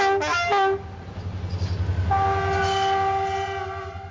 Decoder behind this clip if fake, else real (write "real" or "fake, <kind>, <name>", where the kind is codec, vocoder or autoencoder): real